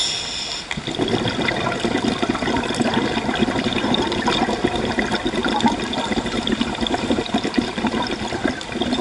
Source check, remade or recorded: recorded